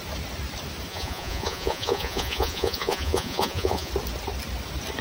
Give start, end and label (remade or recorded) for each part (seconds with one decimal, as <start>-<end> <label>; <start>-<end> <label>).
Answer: 0.0-0.9 recorded; 0.9-3.9 remade; 3.9-5.0 recorded